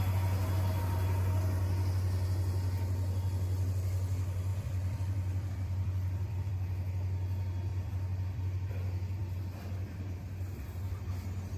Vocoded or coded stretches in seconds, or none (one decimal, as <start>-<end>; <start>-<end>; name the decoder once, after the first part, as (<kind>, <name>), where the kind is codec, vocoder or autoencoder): 4.5-6.5 (vocoder, BigVGAN v2); 7.7-8.7